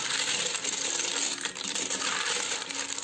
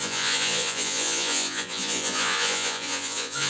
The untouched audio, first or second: first